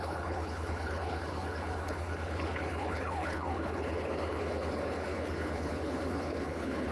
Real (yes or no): no